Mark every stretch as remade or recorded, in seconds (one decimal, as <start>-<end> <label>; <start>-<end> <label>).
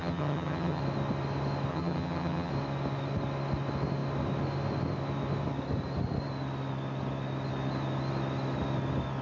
0.0-0.8 remade; 0.8-1.7 recorded; 1.7-2.5 remade; 2.5-9.2 recorded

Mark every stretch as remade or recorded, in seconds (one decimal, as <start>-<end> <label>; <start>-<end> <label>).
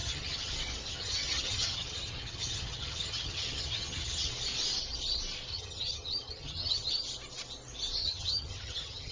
0.0-0.5 remade; 0.5-0.9 recorded; 0.9-4.3 remade; 4.3-5.5 recorded; 5.5-6.9 remade; 6.9-8.0 recorded; 8.0-9.1 remade